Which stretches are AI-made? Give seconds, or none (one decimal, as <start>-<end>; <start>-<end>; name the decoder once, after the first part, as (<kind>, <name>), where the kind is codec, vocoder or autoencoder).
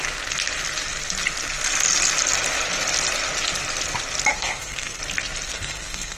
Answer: 4.3-5.0 (codec, SNAC); 5.5-6.2